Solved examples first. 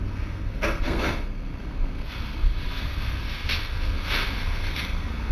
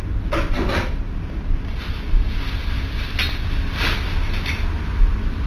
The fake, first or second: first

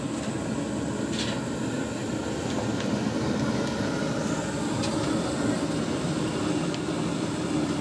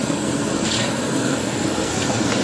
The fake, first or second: second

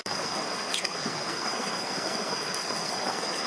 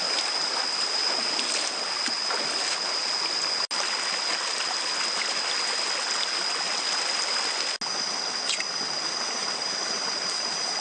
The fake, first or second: first